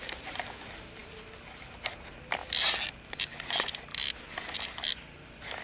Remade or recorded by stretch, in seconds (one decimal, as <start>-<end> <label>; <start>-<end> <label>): 0.0-5.6 recorded